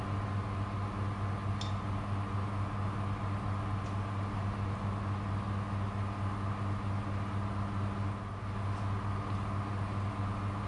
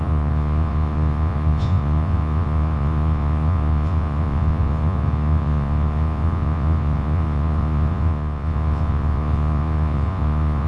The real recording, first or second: first